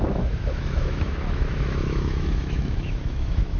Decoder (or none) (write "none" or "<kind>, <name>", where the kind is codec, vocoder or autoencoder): autoencoder, DAC-VAE